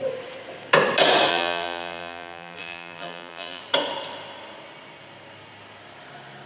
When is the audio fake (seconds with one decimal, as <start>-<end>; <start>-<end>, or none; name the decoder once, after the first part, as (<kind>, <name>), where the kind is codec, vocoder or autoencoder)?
1.3-3.6 (vocoder, BigVGAN v2)